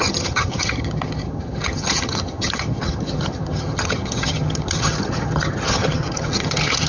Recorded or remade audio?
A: remade